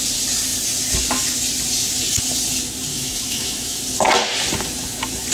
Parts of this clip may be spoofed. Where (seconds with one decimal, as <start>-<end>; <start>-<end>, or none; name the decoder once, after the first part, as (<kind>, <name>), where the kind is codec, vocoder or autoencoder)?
2.9-3.8 (autoencoder, DAC-VAE)